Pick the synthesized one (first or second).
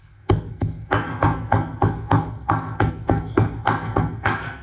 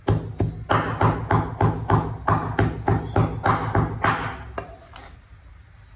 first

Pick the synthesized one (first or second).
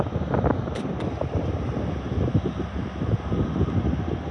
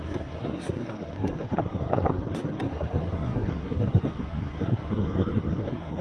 second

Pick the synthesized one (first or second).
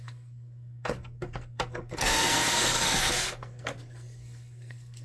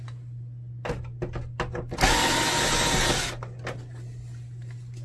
first